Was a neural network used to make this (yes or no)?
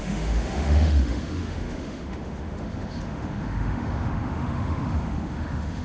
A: yes